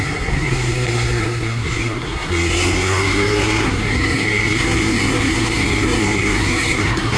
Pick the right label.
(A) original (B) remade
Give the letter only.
B